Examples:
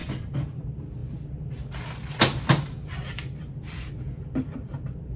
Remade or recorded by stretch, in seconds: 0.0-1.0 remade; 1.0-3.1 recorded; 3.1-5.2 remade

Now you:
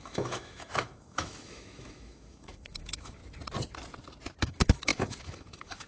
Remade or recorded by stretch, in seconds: 0.0-3.2 remade; 3.2-4.4 recorded; 4.4-5.9 remade

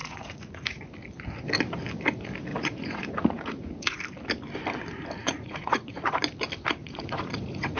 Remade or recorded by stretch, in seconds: 0.0-0.8 remade; 0.8-2.5 recorded; 2.5-4.0 remade; 4.0-5.2 recorded; 5.2-6.2 remade; 6.2-6.8 recorded; 6.8-7.8 remade

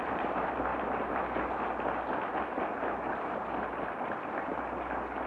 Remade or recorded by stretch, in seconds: 0.0-0.7 remade; 0.7-3.9 recorded; 3.9-4.5 remade; 4.5-5.3 recorded

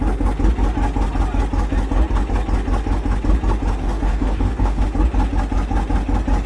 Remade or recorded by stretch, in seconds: 0.0-3.8 recorded; 3.8-4.8 remade; 4.8-6.5 recorded

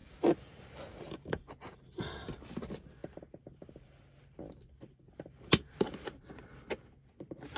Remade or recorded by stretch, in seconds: 0.0-2.4 remade; 2.4-3.0 recorded; 3.0-6.3 remade; 6.3-7.6 recorded